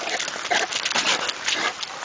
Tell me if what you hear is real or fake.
real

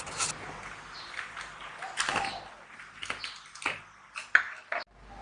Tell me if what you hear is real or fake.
real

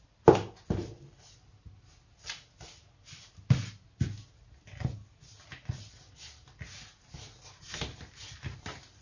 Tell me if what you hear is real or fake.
real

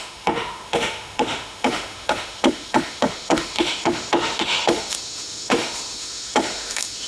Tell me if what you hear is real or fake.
fake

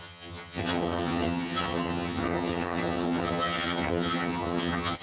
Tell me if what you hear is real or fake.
fake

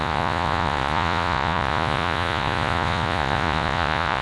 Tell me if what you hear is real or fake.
fake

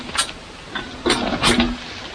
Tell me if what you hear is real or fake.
real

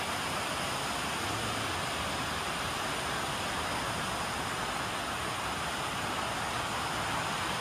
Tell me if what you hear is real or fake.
real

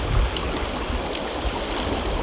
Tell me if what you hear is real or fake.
real